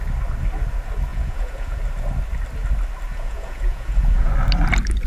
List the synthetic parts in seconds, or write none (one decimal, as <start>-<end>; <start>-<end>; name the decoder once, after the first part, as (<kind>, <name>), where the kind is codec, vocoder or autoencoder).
1.1-1.8 (vocoder, Vocos); 3.1-4.3